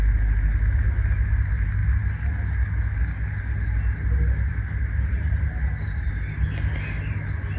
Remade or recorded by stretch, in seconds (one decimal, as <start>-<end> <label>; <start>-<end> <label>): 0.0-7.6 recorded